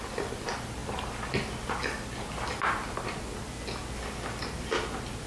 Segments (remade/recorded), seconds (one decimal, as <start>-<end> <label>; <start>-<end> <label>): 0.0-5.3 recorded